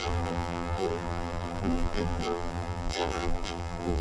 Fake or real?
fake